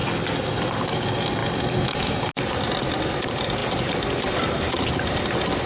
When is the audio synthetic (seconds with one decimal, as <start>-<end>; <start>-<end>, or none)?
none